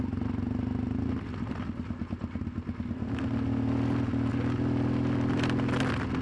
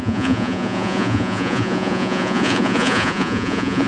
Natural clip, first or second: first